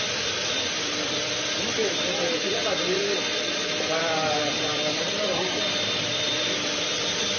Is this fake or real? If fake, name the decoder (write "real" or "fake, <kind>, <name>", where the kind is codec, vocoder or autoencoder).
fake, vocoder, BigVGAN v2